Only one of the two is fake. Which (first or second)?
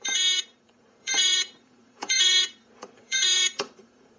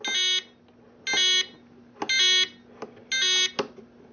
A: first